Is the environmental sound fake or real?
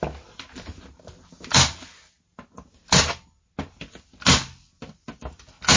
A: real